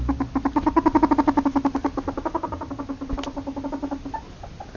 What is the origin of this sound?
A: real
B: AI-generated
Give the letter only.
A